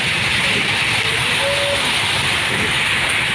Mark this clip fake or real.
real